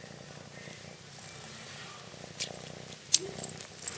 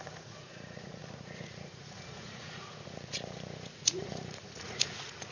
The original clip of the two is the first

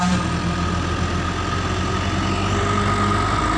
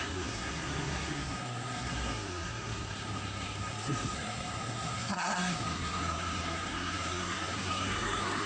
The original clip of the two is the first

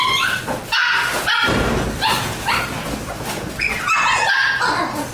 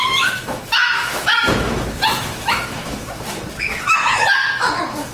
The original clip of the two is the first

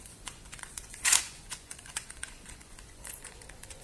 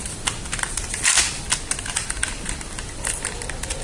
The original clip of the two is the second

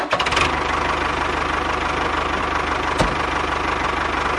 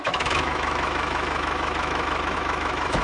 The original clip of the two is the first